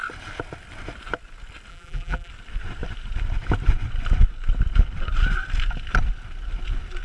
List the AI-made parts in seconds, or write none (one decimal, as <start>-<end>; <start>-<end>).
1.7-2.3

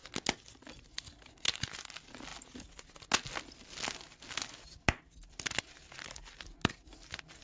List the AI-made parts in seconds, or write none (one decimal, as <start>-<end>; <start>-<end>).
none

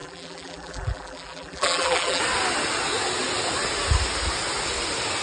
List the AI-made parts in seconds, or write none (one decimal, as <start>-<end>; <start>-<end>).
0.0-2.2

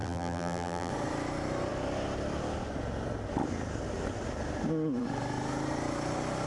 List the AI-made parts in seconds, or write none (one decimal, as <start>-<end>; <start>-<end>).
0.0-0.9

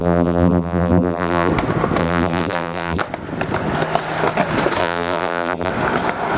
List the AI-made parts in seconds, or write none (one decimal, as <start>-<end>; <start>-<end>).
0.0-1.5; 2.0-3.0; 4.8-5.7

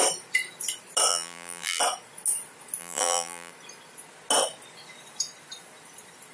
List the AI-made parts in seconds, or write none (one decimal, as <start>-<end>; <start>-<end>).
1.1-1.8; 2.8-3.5